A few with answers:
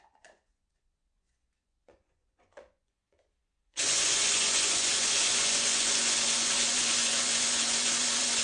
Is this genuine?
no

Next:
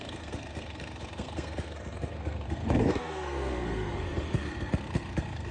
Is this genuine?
no